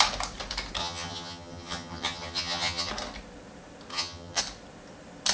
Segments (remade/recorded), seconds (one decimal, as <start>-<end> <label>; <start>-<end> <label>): 0.0-0.8 recorded; 0.8-2.9 remade; 2.9-3.9 recorded; 3.9-4.4 remade; 4.4-5.3 recorded